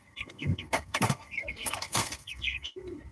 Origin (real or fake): fake